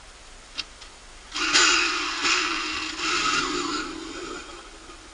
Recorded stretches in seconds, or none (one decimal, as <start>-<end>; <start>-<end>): 0.0-2.3; 2.9-5.1